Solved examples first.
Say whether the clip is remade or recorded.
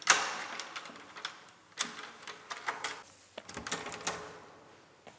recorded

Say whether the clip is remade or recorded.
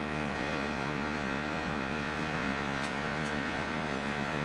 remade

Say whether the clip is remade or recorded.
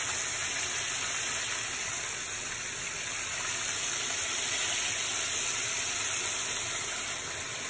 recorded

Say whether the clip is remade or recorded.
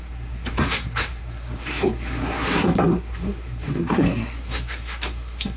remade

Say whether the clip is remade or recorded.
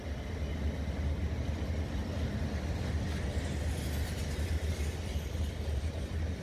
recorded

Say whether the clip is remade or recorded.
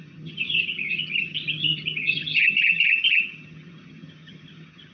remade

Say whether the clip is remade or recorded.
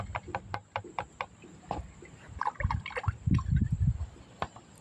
recorded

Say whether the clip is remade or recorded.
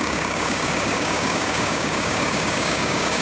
remade